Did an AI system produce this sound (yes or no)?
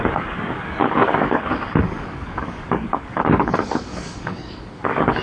yes